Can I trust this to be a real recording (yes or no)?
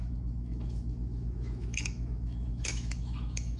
no